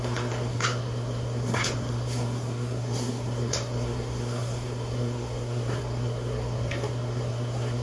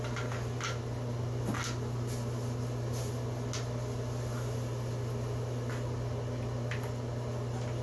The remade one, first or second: first